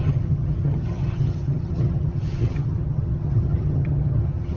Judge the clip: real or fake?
fake